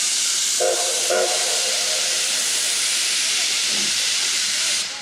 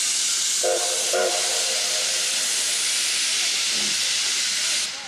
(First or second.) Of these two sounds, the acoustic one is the second